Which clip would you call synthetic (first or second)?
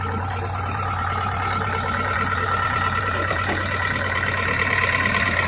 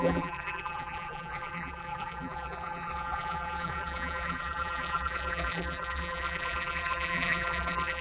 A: second